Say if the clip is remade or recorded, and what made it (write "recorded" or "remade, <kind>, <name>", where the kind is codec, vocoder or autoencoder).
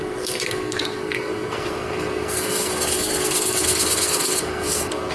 remade, codec, SNAC